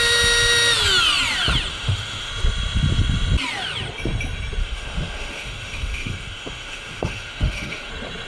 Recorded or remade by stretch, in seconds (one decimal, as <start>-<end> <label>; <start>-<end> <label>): 0.0-1.7 recorded; 1.7-2.3 remade; 2.3-4.6 recorded; 4.6-7.9 remade; 7.9-8.3 recorded